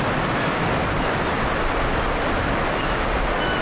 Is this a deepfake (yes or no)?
no